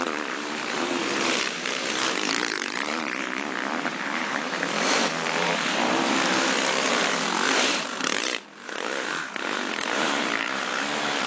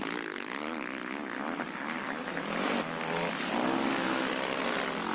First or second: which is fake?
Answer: first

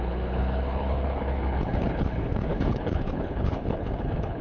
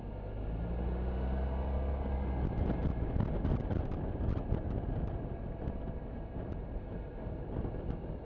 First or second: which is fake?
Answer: first